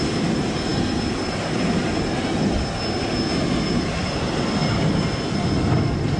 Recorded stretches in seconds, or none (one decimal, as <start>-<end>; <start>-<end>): 4.6-5.8